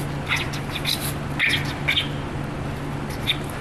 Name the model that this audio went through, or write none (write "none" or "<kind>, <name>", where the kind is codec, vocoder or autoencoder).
none